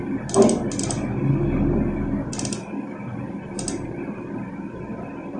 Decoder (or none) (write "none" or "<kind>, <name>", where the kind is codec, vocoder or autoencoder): none